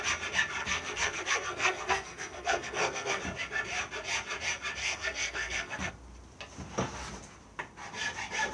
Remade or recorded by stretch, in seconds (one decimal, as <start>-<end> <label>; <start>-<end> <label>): 0.0-0.6 recorded; 0.6-3.2 remade; 3.2-4.8 recorded; 4.8-5.9 remade; 5.9-8.5 recorded